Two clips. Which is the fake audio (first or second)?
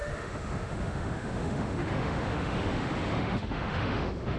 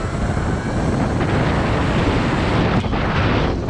first